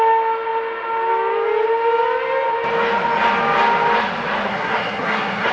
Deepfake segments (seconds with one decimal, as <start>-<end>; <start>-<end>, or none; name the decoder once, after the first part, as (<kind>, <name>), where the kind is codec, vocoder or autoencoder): 4.5-5.5 (codec, SNAC)